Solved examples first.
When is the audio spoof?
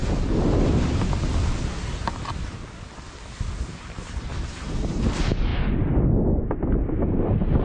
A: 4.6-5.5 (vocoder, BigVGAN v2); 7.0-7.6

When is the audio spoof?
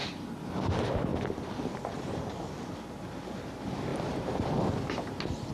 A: 0.0-0.6 (vocoder, BigVGAN v2); 1.1-2.2; 3.9-4.8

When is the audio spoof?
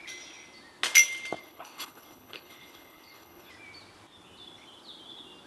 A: 1.4-3.5 (codec, HILCodec)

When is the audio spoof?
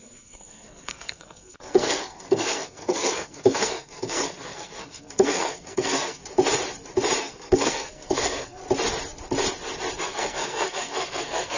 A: 0.0-6.2 (codec, SNAC); 7.2-8.6; 10.0-11.6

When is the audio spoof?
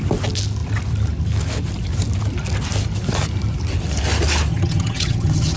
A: 4.5-5.6 (vocoder, HiFi-GAN)